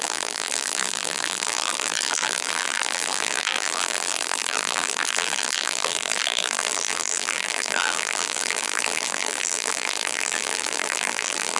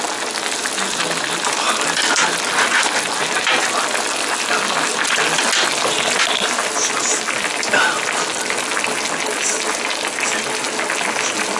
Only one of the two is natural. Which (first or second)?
second